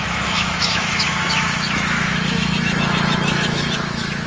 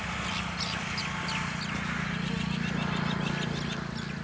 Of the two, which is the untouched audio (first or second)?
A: second